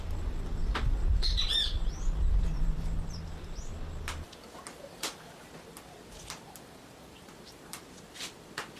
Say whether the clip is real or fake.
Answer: fake